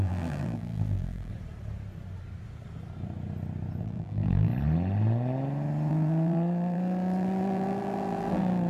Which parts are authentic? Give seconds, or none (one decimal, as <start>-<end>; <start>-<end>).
1.3-3.8; 4.5-5.9